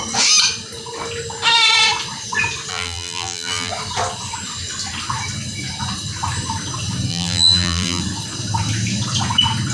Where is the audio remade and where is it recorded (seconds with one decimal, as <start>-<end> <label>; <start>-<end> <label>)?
0.0-2.7 recorded; 2.7-3.7 remade; 3.7-7.1 recorded; 7.1-8.0 remade; 8.0-9.7 recorded